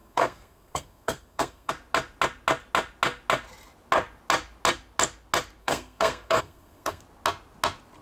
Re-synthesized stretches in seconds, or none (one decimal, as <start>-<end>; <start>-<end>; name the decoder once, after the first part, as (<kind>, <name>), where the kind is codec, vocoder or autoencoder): 0.0-1.7 (codec, SNAC); 5.6-7.0